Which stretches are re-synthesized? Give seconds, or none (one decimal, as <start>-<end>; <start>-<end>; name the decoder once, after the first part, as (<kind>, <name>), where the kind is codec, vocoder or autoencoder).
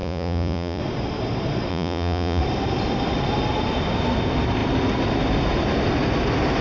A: 0.0-0.8 (vocoder, Vocos); 1.7-2.4